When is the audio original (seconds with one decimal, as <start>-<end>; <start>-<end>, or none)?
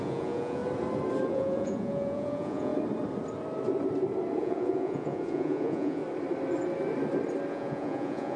0.6-1.3; 2.7-4.4; 6.0-7.5